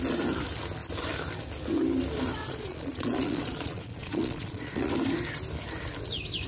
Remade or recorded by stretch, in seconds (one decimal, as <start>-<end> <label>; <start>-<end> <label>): 0.0-2.4 recorded; 2.4-4.9 remade; 4.9-6.5 recorded